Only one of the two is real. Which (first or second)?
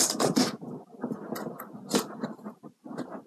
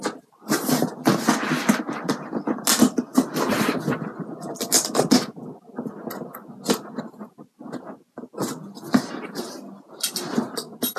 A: second